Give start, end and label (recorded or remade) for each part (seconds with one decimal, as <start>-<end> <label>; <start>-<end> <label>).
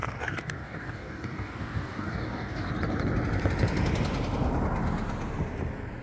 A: 0.0-2.7 remade; 2.7-6.0 recorded